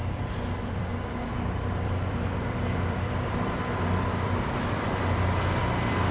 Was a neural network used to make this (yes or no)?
yes